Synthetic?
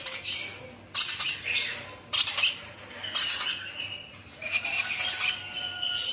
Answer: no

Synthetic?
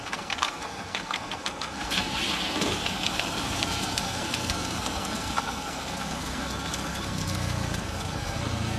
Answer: yes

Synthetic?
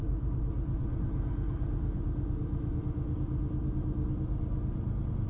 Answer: no